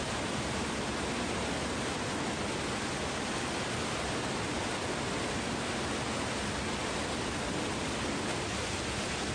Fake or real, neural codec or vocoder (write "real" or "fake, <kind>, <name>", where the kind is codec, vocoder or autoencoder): real